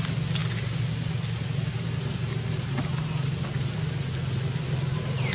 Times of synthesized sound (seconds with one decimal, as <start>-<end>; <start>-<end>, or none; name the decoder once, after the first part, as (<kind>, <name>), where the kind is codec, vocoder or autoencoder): none